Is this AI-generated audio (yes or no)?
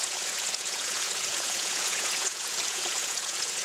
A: yes